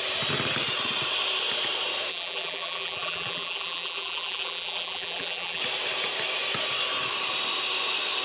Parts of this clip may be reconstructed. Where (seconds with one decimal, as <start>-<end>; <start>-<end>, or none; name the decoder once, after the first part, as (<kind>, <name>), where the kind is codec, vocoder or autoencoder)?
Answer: 2.1-5.6 (vocoder, BigVGAN v2)